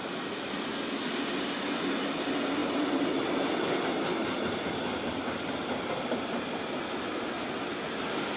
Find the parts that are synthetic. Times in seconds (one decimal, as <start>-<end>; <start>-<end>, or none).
none